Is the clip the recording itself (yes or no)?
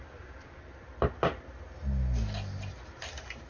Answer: yes